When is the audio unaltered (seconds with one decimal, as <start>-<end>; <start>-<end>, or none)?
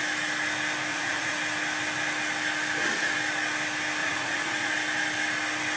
0.0-0.9; 1.4-4.0; 4.7-5.8